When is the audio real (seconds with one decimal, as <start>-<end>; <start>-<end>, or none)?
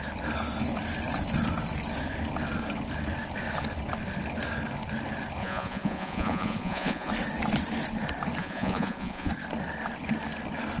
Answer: 0.0-5.4; 7.1-8.4; 9.3-10.8